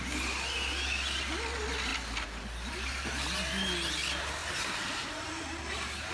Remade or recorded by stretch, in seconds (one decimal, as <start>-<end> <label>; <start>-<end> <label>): 0.0-4.4 recorded; 4.4-5.6 remade; 5.6-6.1 recorded